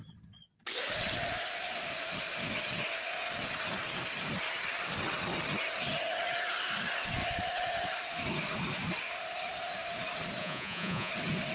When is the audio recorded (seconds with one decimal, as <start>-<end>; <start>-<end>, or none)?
0.0-10.4; 11.1-11.5